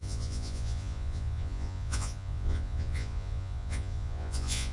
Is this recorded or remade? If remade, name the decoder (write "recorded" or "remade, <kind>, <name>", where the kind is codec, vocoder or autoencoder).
remade, vocoder, Vocos